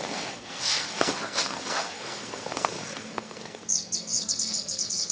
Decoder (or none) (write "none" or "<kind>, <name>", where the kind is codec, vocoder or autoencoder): codec, SNAC